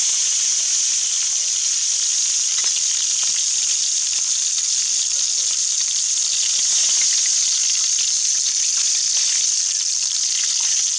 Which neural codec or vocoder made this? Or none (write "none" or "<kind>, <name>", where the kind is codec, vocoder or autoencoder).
none